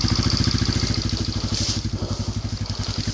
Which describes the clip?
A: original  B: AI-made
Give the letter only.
A